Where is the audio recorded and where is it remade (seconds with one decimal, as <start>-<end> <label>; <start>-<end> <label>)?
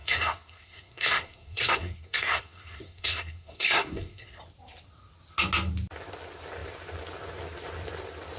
0.0-4.4 remade; 4.4-8.4 recorded